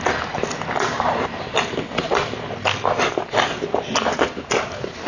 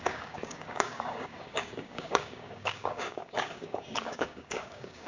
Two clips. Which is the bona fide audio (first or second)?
first